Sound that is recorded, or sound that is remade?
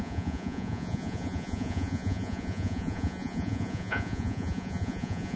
remade